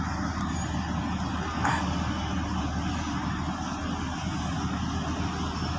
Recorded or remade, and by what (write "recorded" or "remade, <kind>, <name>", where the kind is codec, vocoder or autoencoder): recorded